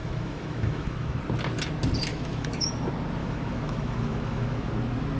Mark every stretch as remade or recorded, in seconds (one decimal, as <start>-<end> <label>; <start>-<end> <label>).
0.0-1.2 remade; 1.2-2.1 recorded; 2.1-2.7 remade; 2.7-3.2 recorded; 3.2-4.7 remade; 4.7-5.2 recorded